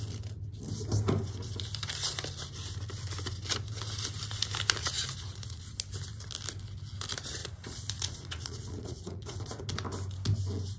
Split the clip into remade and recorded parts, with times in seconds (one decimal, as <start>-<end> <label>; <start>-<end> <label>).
0.0-4.8 recorded; 4.8-5.6 remade; 5.6-7.4 recorded; 7.4-9.6 remade; 9.6-10.8 recorded